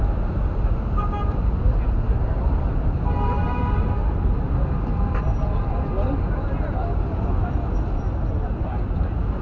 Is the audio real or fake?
real